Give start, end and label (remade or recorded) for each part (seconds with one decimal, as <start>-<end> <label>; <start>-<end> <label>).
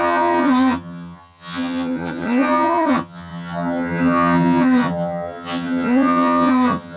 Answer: 0.0-7.0 remade